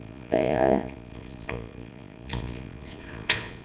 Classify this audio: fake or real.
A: fake